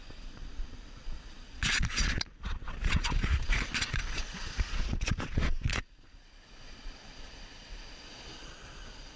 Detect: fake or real fake